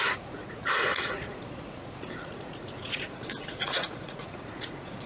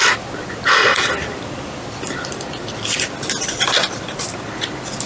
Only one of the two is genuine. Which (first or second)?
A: second